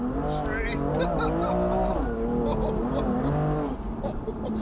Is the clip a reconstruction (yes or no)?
no